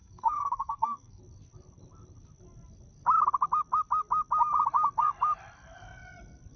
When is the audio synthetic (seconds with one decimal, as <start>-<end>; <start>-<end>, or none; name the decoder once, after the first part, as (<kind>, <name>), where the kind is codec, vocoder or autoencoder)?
0.0-1.2 (codec, SNAC)